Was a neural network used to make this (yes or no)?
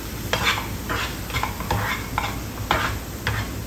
no